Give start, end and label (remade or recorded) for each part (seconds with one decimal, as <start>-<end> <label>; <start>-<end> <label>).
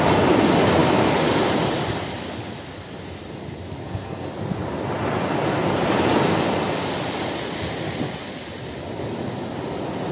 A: 0.0-3.8 recorded; 3.8-4.3 remade; 4.3-10.1 recorded